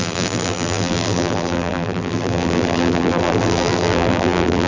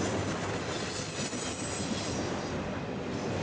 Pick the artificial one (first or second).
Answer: first